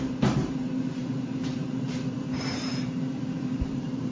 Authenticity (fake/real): fake